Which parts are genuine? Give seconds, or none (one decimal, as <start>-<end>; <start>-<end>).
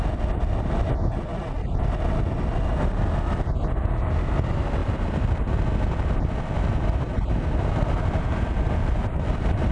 0.0-4.8; 5.5-8.3